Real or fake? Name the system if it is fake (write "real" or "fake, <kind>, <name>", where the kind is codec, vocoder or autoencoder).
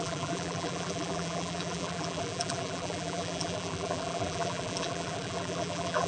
fake, vocoder, BigVGAN v2